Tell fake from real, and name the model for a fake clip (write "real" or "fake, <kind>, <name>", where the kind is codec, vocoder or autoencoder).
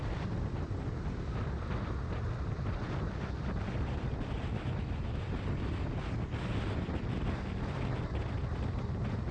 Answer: real